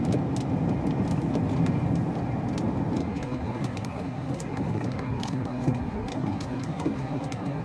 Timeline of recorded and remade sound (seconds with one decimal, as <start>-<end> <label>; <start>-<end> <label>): 0.0-3.0 recorded; 3.0-7.6 remade